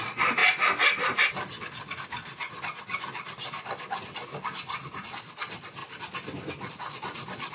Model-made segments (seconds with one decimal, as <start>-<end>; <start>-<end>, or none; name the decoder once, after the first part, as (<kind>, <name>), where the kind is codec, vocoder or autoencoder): none